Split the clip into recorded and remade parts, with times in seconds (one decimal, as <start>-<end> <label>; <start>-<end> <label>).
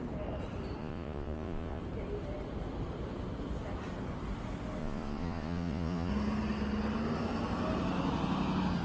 0.0-0.8 recorded; 0.8-1.8 remade; 1.8-4.8 recorded; 4.8-6.1 remade; 6.1-8.8 recorded